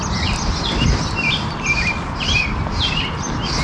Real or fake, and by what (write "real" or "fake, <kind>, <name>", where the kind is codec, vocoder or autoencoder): real